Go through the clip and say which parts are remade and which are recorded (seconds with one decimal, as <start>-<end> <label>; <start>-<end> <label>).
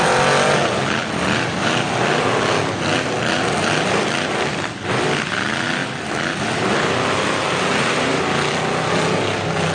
0.0-9.7 recorded